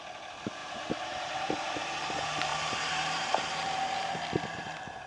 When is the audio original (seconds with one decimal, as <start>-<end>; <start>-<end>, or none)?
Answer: 0.0-0.6; 1.8-2.5; 4.1-5.1